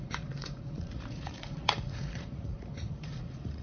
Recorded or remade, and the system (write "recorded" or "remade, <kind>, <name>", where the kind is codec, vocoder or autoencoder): remade, vocoder, Vocos